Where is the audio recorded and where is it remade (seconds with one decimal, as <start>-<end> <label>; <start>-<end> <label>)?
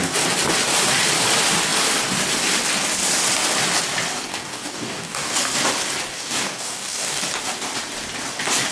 0.0-4.3 recorded; 4.3-5.3 remade; 5.3-6.1 recorded; 6.1-7.2 remade; 7.2-8.7 recorded